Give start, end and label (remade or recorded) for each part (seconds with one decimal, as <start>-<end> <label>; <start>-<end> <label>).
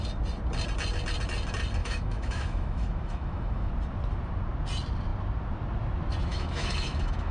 0.0-1.8 recorded; 1.8-3.7 remade; 3.7-6.3 recorded; 6.3-7.3 remade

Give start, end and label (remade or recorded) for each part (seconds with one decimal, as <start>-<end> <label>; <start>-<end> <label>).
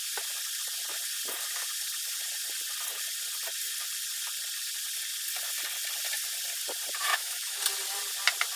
0.0-7.1 recorded; 7.1-7.6 remade; 7.6-8.6 recorded